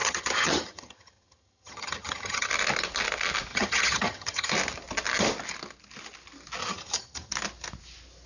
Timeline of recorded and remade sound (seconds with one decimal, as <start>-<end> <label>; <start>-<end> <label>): 0.0-2.5 remade; 2.5-3.5 recorded; 3.5-4.5 remade; 4.5-6.6 recorded; 6.6-7.3 remade; 7.3-8.3 recorded